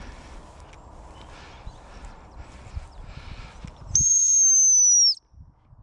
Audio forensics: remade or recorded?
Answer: recorded